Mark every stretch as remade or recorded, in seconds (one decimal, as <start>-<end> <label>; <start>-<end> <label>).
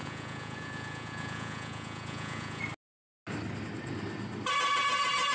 0.0-2.6 remade; 2.6-5.3 recorded